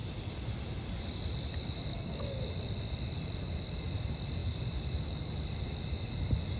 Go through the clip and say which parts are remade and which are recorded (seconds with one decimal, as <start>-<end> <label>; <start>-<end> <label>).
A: 0.0-1.9 recorded; 1.9-2.4 remade; 2.4-6.6 recorded